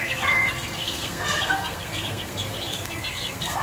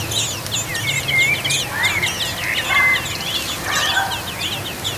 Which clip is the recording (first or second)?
second